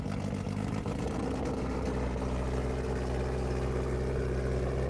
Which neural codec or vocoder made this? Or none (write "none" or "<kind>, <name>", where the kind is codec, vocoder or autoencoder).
none